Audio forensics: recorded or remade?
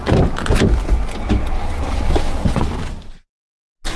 recorded